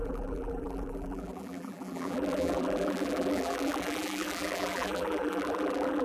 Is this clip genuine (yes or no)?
no